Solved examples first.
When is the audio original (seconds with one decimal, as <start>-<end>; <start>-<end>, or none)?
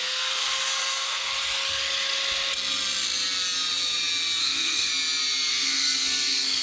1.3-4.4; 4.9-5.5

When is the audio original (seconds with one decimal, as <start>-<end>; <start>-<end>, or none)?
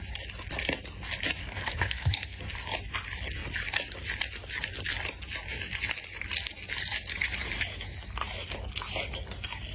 0.0-1.4; 2.4-9.7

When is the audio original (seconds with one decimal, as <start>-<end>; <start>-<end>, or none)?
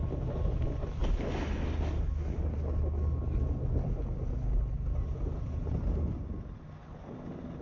0.0-7.6